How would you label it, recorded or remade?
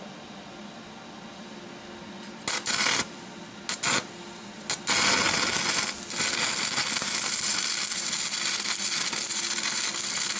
recorded